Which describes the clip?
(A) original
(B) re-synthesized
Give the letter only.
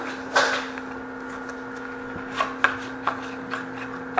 A